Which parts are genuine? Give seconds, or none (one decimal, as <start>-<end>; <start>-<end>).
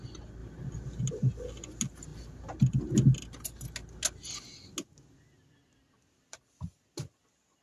0.0-7.6